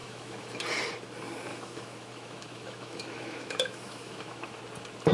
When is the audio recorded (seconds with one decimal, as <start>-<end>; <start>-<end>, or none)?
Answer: 0.6-1.5; 4.6-5.1